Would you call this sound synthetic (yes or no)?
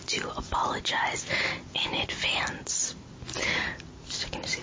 no